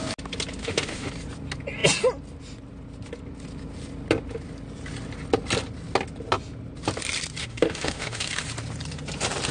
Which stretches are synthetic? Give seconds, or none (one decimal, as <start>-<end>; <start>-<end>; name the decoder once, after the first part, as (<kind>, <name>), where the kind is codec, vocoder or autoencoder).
0.6-1.1 (autoencoder, DAC-VAE); 7.4-8.4